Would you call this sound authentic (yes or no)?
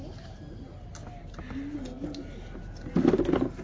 yes